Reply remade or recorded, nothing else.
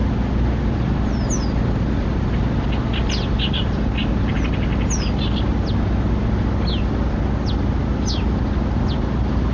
recorded